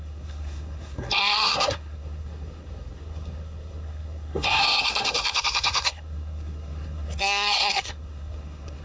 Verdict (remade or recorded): remade